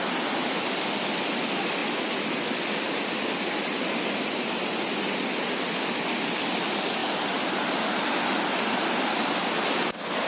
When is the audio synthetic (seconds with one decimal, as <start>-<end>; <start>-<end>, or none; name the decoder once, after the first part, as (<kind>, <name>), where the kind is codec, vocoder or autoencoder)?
none